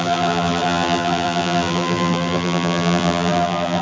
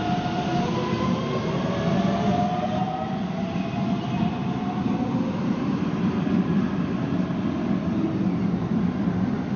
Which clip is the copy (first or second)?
first